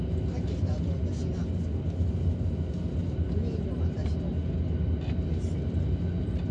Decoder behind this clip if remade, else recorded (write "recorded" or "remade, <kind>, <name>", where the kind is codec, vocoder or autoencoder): recorded